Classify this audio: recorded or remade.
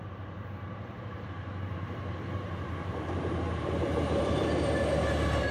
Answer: remade